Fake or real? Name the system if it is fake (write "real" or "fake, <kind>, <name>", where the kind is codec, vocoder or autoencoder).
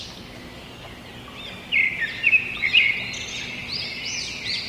real